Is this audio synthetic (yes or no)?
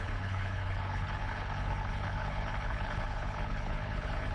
yes